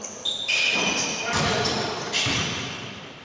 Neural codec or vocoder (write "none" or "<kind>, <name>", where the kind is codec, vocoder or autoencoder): none